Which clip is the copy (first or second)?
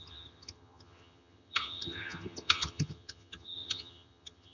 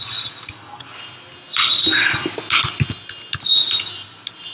first